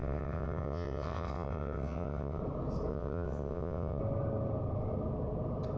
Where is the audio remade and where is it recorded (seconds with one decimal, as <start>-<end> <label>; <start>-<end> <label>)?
0.0-2.4 remade; 2.4-2.9 recorded; 2.9-4.0 remade; 4.0-5.8 recorded